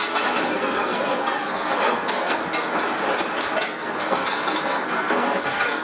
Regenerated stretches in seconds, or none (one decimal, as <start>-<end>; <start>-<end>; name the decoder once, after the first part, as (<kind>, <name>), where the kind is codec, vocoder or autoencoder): 0.0-2.4 (codec, SNAC); 3.6-5.8